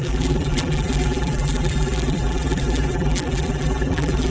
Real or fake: fake